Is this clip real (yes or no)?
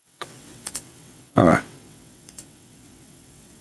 no